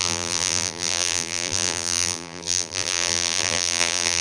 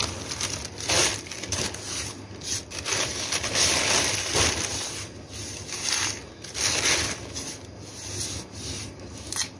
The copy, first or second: first